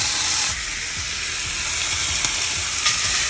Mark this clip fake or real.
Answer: real